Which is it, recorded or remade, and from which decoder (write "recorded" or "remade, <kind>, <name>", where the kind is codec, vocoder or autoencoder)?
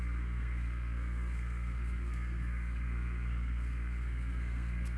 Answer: remade, codec, SNAC